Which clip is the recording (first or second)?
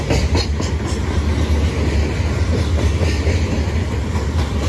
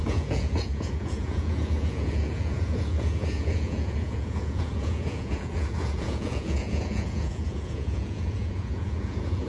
first